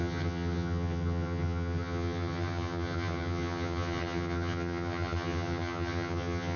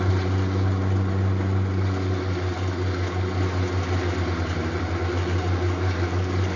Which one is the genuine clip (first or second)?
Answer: second